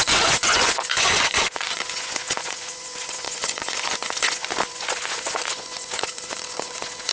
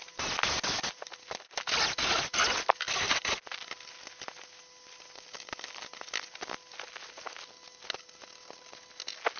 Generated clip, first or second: first